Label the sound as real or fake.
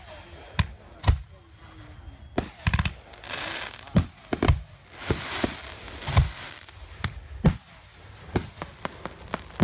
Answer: real